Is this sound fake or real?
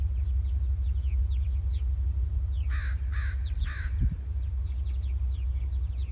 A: real